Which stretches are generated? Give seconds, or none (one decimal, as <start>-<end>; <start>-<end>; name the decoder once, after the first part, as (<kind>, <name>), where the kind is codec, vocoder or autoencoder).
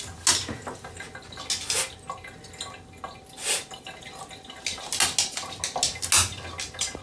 6.3-7.0 (vocoder, BigVGAN v2)